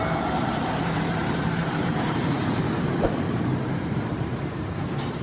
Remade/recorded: remade